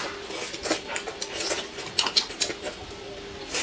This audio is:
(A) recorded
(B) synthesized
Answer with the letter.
A